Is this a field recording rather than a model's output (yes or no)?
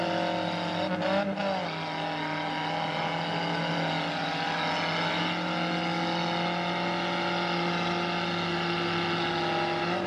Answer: yes